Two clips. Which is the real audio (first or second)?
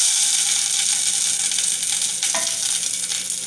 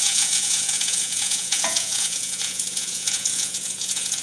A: first